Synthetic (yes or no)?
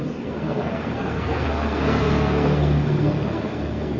yes